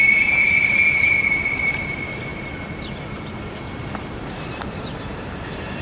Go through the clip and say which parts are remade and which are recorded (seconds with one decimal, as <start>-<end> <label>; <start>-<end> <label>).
0.0-2.3 remade; 2.3-4.0 recorded; 4.0-5.8 remade

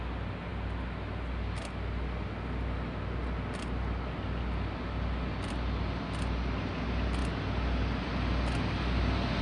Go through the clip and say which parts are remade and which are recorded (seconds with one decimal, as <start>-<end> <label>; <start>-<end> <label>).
0.0-9.4 recorded

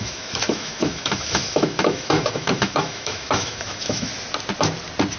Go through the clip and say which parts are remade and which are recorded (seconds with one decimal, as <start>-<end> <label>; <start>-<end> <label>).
0.0-4.1 remade; 4.1-5.2 recorded

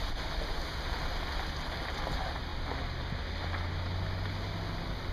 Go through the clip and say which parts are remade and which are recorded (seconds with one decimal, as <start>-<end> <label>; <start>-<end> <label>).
0.0-5.1 recorded

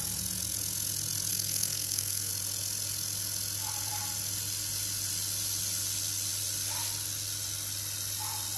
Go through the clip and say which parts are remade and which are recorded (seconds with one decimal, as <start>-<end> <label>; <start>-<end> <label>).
0.0-1.3 recorded; 1.3-2.3 remade; 2.3-8.6 recorded